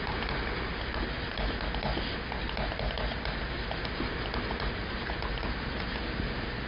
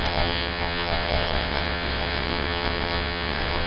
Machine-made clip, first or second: second